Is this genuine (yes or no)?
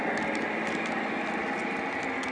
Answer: yes